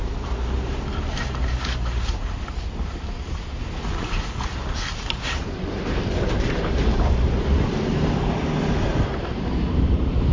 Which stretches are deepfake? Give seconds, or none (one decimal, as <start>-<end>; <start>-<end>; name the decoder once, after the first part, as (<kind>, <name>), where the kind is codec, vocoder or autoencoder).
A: 0.0-2.2 (vocoder, BigVGAN v2); 5.4-10.3